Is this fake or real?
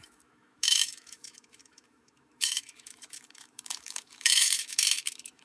fake